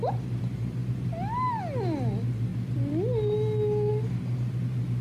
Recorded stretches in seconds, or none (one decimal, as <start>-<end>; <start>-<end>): 0.0-5.0